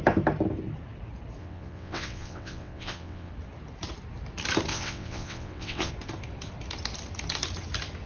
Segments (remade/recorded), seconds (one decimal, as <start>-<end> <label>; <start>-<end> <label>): 0.0-1.4 recorded; 1.4-3.3 remade; 3.3-4.7 recorded; 4.7-5.9 remade; 5.9-8.1 recorded

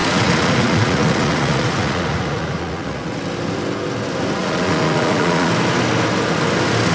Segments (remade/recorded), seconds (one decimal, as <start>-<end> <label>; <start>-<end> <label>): 0.0-3.2 remade; 3.2-4.4 recorded; 4.4-5.5 remade; 5.5-6.9 recorded